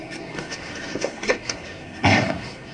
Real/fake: fake